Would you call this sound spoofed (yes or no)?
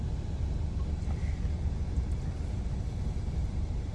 yes